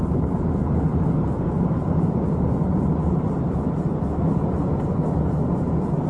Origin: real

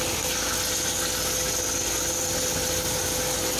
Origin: real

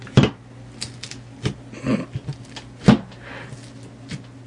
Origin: real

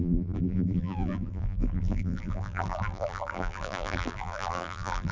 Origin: fake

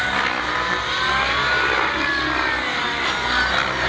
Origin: real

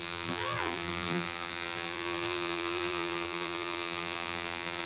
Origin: fake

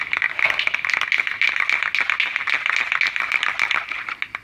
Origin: real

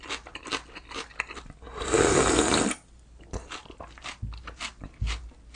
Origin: real